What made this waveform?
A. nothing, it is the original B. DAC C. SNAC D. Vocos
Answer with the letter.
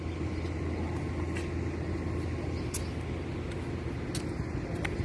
A